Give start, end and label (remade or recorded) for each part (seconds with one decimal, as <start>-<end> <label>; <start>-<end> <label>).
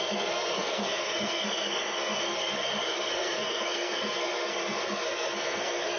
0.0-6.0 remade